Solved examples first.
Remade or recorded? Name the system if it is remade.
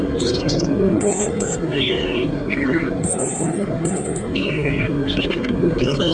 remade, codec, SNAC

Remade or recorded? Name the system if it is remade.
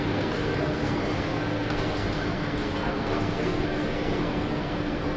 remade, codec, SNAC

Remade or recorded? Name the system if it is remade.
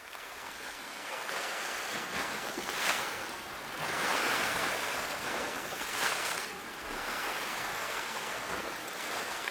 remade, codec, SNAC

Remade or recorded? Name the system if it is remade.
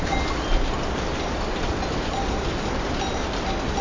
recorded